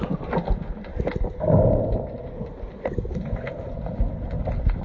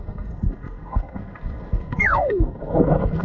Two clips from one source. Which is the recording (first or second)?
first